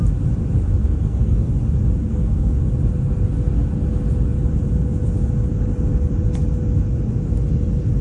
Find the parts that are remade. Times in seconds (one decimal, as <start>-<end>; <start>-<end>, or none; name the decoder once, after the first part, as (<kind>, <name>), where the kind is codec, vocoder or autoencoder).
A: 0.8-1.5 (codec, SNAC); 2.0-2.6